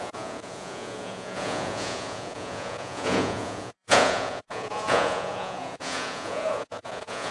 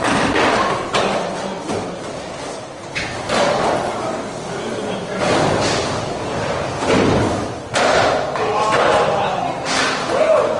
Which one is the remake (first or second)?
first